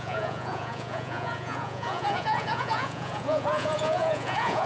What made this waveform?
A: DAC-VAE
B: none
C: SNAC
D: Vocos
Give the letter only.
D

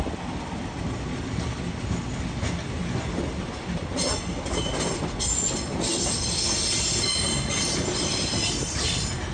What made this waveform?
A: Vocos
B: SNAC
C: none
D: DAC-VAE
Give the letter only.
C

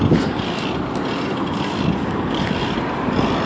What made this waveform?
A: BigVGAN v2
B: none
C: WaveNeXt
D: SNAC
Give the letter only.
A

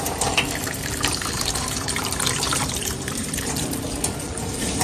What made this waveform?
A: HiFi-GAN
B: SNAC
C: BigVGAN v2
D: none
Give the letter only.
C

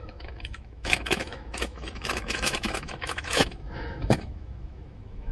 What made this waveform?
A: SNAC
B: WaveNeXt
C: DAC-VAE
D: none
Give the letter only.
C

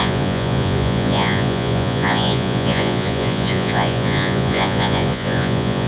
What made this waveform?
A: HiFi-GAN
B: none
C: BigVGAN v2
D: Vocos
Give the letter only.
D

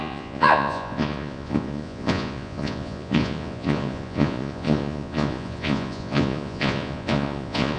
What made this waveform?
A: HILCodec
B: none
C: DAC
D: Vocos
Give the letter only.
D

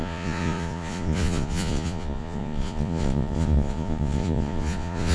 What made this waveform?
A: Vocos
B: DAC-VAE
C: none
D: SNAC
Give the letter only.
A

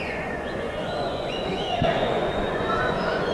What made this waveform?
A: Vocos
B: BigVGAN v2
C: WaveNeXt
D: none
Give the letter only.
A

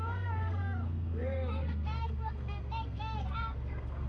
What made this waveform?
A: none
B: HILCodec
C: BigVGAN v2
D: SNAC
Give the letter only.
D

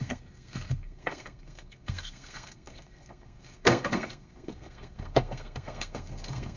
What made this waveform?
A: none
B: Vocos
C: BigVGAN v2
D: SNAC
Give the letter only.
D